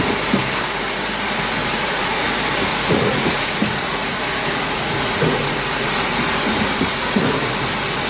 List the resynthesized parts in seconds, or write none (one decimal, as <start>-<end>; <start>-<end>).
1.6-2.3; 2.7-7.3